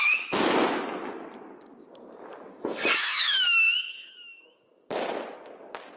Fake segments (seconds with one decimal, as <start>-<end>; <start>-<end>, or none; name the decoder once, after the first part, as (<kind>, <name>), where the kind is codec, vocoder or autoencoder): 3.0-4.8 (autoencoder, DAC-VAE)